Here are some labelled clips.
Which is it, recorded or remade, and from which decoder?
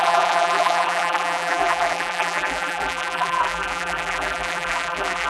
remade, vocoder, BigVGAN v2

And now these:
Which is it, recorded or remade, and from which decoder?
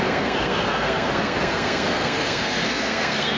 remade, codec, SNAC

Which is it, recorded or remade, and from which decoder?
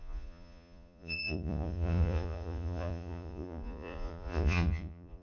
remade, vocoder, Vocos